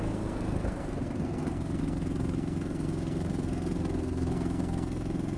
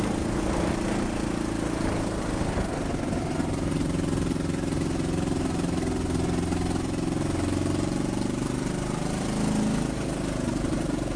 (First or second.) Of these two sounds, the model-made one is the first